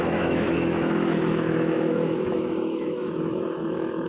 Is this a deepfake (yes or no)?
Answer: yes